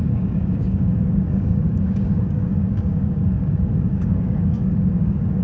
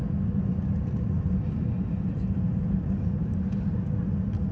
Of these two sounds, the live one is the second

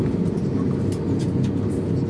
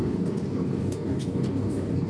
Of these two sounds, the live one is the first